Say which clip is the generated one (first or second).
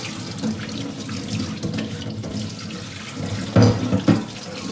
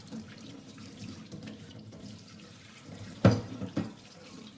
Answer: second